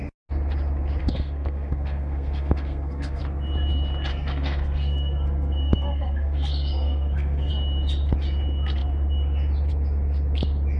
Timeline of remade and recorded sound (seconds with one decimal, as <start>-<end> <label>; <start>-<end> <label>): 0.0-1.0 recorded; 1.0-3.2 remade; 3.2-4.1 recorded; 4.1-7.5 remade; 7.5-10.8 recorded